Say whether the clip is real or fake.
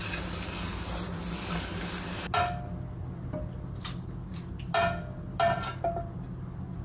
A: real